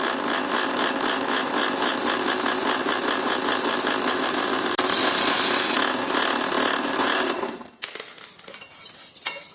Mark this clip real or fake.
real